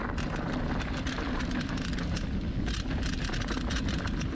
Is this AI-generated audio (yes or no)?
no